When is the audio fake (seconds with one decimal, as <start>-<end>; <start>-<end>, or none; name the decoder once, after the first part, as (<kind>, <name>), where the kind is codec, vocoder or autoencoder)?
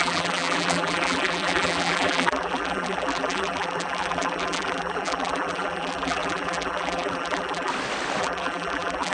0.0-7.7 (vocoder, BigVGAN v2); 8.2-9.1